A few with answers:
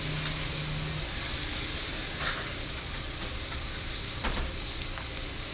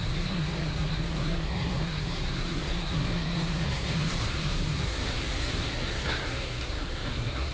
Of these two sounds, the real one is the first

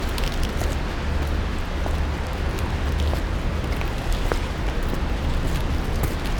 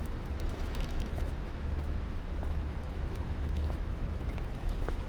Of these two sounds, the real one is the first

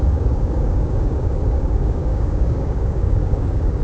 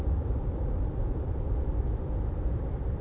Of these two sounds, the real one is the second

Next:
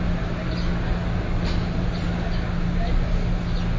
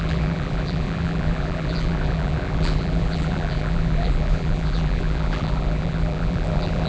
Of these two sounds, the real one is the first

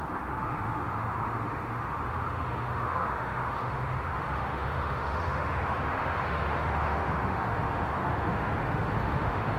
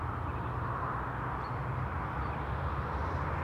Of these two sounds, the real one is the second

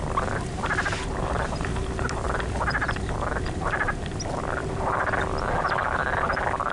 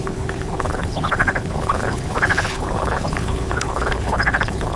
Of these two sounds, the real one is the first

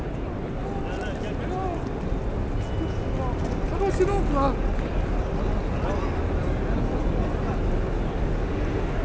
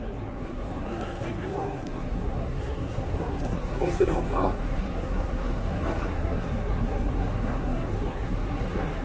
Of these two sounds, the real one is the first